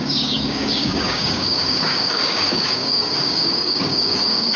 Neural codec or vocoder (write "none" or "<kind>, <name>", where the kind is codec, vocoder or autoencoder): codec, DAC